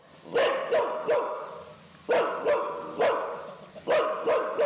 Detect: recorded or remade recorded